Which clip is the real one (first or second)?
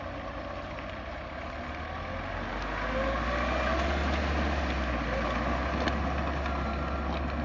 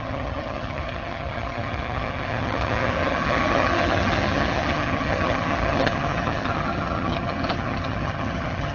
first